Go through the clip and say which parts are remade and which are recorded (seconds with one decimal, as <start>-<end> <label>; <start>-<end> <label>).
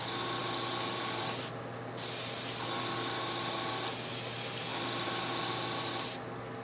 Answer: 0.0-6.6 recorded